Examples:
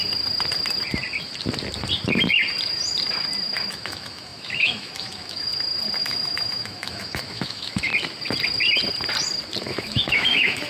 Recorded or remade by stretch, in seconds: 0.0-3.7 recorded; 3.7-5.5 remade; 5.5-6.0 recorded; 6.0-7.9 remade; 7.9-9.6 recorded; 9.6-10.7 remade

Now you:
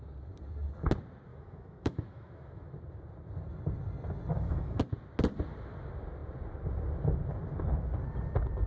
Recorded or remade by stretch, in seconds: 0.0-1.3 recorded; 1.3-2.7 remade; 2.7-4.3 recorded; 4.3-4.8 remade; 4.8-8.7 recorded

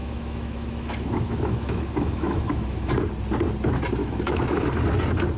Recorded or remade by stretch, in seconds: 0.0-2.9 remade; 2.9-4.0 recorded; 4.0-4.6 remade; 4.6-5.4 recorded

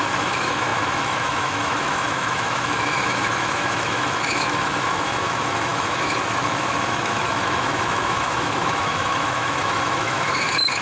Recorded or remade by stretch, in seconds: 0.0-10.8 remade

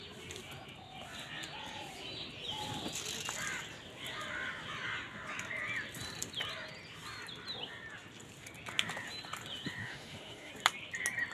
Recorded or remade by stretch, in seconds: 0.0-9.8 recorded; 9.8-10.5 remade; 10.5-11.3 recorded

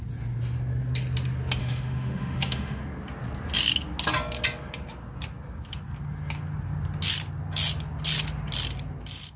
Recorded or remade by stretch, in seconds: 0.0-1.6 recorded; 1.6-2.8 remade; 2.8-9.4 recorded

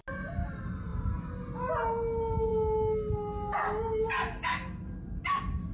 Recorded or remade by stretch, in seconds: 0.0-5.7 recorded

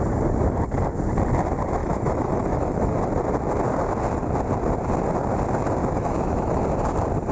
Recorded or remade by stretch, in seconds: 0.0-1.8 recorded; 1.8-2.9 remade; 2.9-5.8 recorded; 5.8-6.6 remade; 6.6-7.3 recorded